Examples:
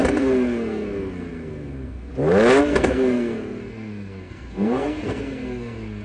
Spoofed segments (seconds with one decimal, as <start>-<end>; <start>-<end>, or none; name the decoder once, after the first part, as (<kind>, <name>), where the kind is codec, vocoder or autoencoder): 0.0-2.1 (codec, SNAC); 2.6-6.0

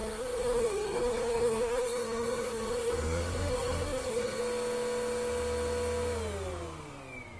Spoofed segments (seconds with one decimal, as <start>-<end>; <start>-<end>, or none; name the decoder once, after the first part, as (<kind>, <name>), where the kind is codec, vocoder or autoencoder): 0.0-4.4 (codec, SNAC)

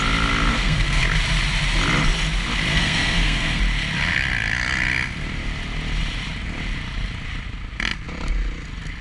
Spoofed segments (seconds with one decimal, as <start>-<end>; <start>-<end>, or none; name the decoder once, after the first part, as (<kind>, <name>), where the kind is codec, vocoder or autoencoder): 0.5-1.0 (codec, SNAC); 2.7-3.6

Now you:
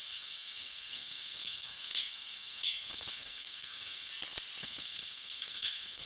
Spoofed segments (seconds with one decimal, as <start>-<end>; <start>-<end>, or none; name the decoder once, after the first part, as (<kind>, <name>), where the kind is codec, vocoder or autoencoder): 0.0-4.1 (codec, SNAC); 4.6-6.1

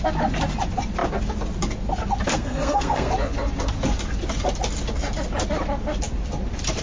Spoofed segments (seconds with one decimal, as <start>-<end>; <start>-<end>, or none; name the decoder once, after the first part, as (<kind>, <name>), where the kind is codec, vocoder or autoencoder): 2.3-3.1 (codec, SNAC)

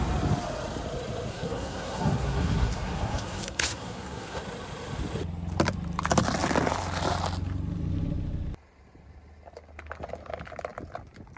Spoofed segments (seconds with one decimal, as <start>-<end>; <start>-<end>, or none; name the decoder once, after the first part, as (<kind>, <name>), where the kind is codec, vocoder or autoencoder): 1.3-4.4 (codec, SNAC)